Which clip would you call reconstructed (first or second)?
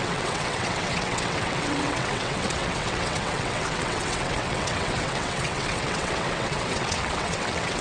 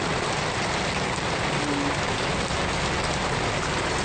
first